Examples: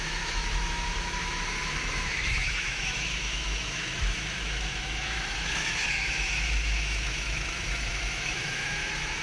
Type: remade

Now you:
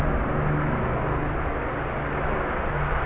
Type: recorded